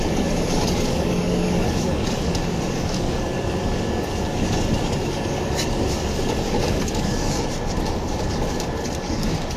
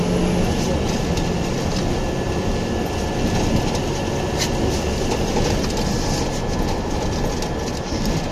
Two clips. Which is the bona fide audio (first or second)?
second